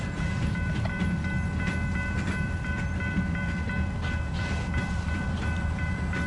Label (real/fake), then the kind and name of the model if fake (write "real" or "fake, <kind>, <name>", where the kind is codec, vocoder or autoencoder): fake, vocoder, BigVGAN v2